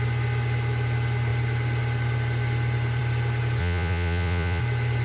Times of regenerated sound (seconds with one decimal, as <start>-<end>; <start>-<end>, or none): 3.6-4.6